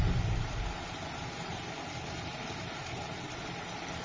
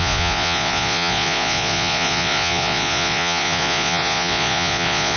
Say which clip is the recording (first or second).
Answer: first